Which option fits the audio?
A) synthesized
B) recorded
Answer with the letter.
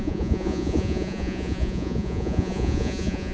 A